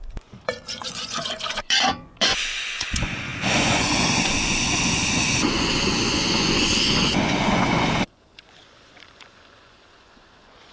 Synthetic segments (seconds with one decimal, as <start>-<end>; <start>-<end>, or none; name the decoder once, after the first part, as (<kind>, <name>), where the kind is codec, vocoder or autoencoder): 0.0-10.7 (vocoder, Vocos)